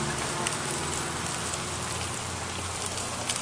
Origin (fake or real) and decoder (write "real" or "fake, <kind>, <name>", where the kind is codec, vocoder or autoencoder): real